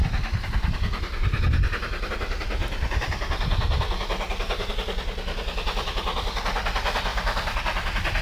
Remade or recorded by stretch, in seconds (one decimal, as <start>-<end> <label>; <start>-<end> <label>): 0.0-2.1 remade; 2.1-2.6 recorded; 2.6-4.7 remade; 4.7-8.2 recorded